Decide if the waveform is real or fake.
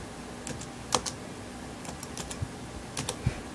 real